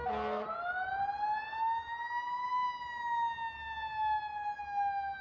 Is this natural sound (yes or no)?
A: yes